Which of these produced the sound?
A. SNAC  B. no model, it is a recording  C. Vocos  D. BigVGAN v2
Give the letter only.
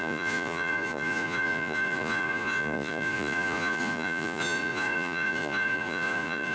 C